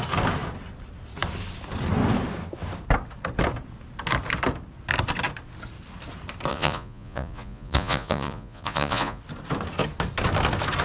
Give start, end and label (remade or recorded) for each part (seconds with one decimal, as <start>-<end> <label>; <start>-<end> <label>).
0.0-6.5 recorded; 6.5-9.2 remade; 9.2-10.8 recorded

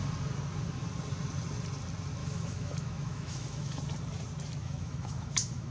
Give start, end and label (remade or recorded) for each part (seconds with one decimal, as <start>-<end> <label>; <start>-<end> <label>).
0.0-2.2 recorded; 2.2-3.8 remade; 3.8-4.6 recorded; 4.6-5.7 remade

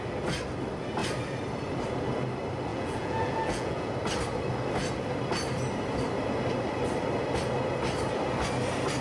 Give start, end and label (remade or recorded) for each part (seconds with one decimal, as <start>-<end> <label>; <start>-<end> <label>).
0.0-2.7 recorded; 2.7-3.9 remade; 3.9-9.0 recorded

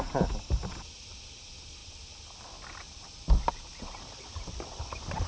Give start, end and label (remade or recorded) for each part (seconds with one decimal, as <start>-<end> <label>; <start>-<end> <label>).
0.0-5.3 recorded

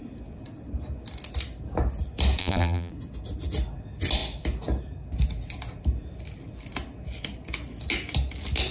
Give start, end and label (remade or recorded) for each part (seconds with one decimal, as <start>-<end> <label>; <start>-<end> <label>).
0.0-2.4 recorded; 2.4-2.9 remade; 2.9-8.7 recorded